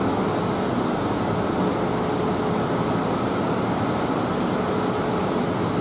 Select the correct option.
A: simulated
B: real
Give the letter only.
B